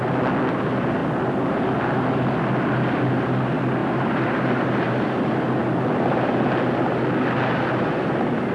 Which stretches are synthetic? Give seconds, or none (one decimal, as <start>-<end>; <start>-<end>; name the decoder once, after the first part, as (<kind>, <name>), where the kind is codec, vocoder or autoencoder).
3.8-5.1 (vocoder, BigVGAN v2)